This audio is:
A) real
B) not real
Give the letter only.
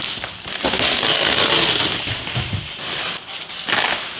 A